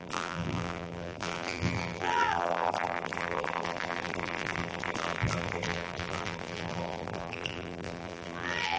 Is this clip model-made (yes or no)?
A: yes